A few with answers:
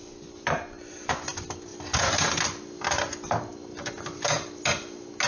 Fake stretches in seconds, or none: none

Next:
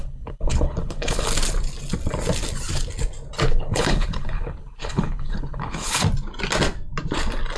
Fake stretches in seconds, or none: 0.0-1.3 (codec, HILCodec); 3.5-6.0

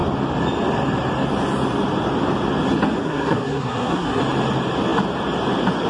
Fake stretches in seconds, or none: 3.0-4.2 (codec, SNAC)

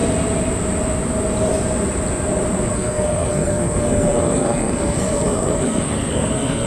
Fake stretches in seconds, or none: 2.7-6.7 (codec, SNAC)

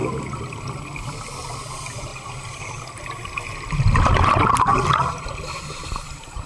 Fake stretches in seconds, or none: none

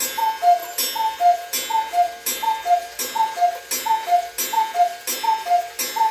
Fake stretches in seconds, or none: none